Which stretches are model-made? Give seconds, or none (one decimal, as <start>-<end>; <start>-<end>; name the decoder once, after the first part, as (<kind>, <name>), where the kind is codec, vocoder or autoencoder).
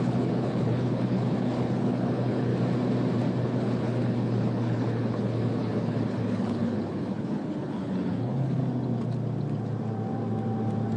0.0-2.5 (codec, HILCodec); 3.4-8.6